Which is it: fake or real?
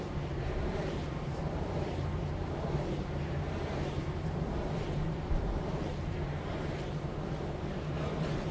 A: fake